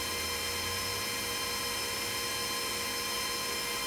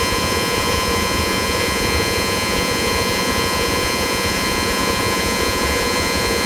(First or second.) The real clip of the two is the first